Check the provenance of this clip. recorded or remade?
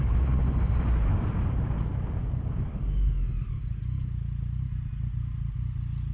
recorded